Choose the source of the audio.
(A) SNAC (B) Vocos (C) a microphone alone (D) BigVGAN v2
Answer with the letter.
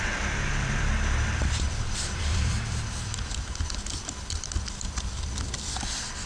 D